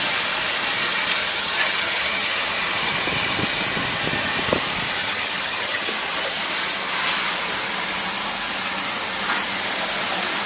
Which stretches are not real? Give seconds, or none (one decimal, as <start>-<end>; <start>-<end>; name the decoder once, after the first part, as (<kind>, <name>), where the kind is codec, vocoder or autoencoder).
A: 1.2-2.4 (vocoder, HiFi-GAN); 5.0-5.9